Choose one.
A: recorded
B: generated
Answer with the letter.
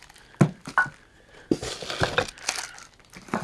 A